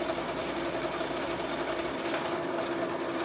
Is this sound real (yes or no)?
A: no